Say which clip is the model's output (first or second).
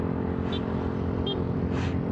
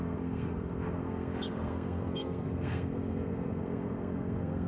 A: second